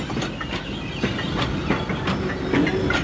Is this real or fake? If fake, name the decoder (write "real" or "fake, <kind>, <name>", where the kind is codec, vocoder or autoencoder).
real